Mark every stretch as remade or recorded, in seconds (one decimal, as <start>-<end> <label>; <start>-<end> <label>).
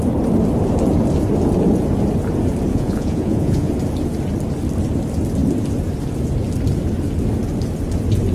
0.0-2.7 recorded; 2.7-3.7 remade; 3.7-8.3 recorded